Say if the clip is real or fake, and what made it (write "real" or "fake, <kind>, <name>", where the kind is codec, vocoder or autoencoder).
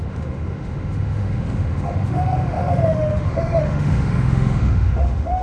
fake, autoencoder, DAC-VAE